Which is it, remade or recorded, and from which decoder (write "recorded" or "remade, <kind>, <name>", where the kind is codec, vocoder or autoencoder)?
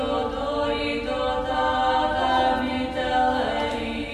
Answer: recorded